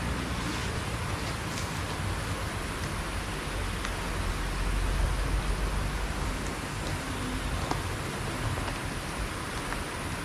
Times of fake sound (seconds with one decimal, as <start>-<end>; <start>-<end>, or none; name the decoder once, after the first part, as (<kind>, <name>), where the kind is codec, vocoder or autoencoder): none